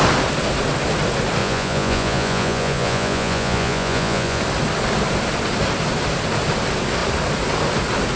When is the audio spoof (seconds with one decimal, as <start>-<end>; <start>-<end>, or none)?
1.4-4.4